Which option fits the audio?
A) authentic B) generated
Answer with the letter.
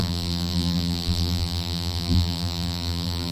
B